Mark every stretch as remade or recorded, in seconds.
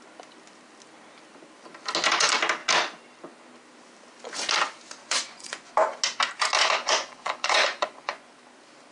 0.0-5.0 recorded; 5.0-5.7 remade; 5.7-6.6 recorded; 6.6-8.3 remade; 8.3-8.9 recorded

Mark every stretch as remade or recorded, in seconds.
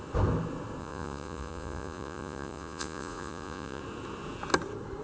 0.0-0.8 recorded; 0.8-3.8 remade; 3.8-5.0 recorded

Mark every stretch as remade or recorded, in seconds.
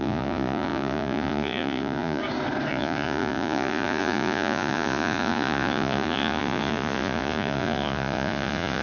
0.0-2.2 remade; 2.2-2.7 recorded; 2.7-8.8 remade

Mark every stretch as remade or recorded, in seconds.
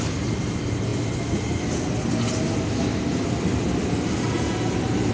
0.0-5.1 recorded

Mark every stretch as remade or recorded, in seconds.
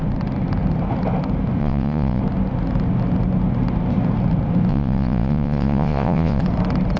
0.0-1.6 recorded; 1.6-2.2 remade; 2.2-4.7 recorded; 4.7-6.4 remade; 6.4-7.0 recorded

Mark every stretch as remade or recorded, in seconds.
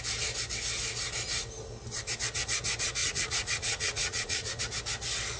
0.0-3.0 recorded; 3.0-4.6 remade; 4.6-5.4 recorded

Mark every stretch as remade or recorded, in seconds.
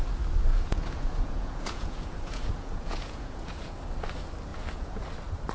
0.0-0.5 recorded; 0.5-3.8 remade; 3.8-4.5 recorded; 4.5-5.0 remade; 5.0-5.5 recorded